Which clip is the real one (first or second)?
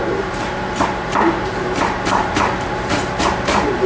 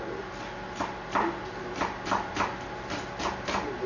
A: second